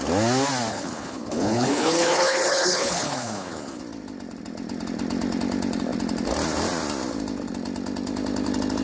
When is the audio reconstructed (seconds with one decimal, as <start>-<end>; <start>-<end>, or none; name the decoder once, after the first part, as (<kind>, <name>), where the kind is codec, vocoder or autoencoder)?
0.7-3.8 (codec, HILCodec)